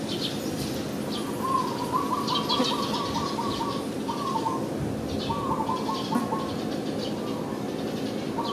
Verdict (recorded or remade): recorded